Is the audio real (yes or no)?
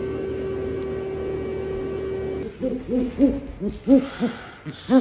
yes